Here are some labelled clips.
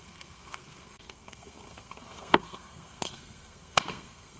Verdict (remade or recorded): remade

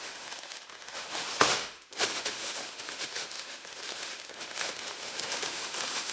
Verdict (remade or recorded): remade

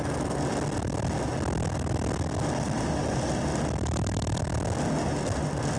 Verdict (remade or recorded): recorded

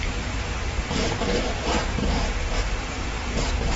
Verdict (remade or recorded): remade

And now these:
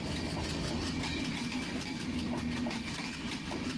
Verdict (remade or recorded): recorded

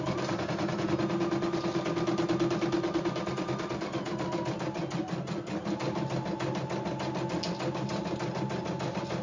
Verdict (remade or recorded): recorded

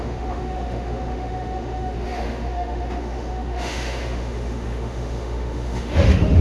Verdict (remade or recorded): remade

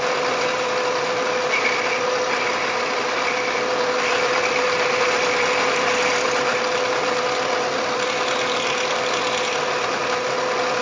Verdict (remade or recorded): recorded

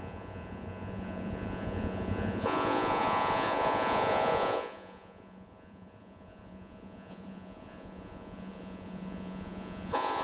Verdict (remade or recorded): remade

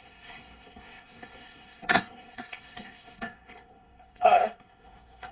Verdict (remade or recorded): remade